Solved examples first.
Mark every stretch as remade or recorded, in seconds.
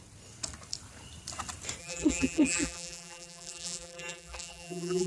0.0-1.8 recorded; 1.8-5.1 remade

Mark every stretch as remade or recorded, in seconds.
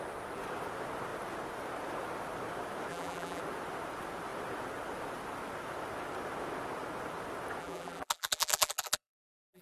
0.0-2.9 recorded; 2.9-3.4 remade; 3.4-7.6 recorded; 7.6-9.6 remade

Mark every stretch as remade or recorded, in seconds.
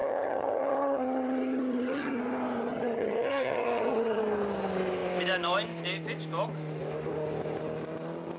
0.0-2.2 remade; 2.2-2.7 recorded; 2.7-4.2 remade; 4.2-8.4 recorded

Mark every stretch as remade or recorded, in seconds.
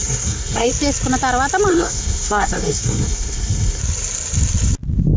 0.0-0.7 remade; 0.7-1.7 recorded; 1.7-3.8 remade; 3.8-5.2 recorded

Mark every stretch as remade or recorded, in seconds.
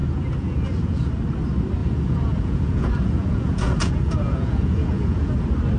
0.0-1.1 remade; 1.1-1.8 recorded; 1.8-5.3 remade; 5.3-5.8 recorded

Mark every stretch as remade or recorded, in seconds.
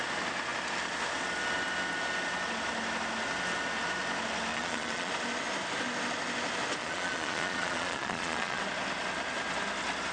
0.0-4.5 recorded; 4.5-5.1 remade; 5.1-6.8 recorded; 6.8-8.6 remade; 8.6-10.1 recorded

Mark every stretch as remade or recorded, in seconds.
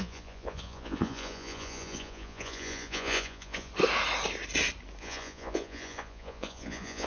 0.0-3.7 remade; 3.7-5.0 recorded; 5.0-7.1 remade